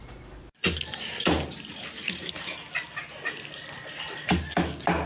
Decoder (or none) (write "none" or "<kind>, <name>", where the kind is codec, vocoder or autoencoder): none